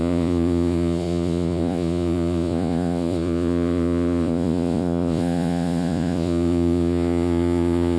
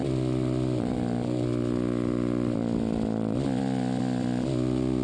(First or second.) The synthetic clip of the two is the first